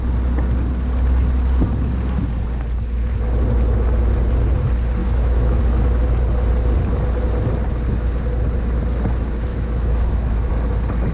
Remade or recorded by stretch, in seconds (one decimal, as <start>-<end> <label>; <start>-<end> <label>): 0.0-5.0 recorded; 5.0-5.6 remade; 5.6-9.5 recorded; 9.5-10.5 remade; 10.5-11.1 recorded